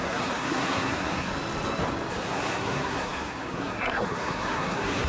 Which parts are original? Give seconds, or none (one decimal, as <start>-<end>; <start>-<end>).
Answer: 1.3-2.1